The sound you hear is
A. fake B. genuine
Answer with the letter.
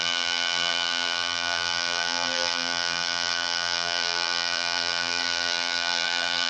A